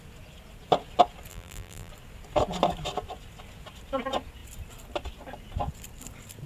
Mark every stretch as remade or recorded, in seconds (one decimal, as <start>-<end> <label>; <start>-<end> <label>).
0.0-1.3 recorded; 1.3-1.9 remade; 1.9-6.5 recorded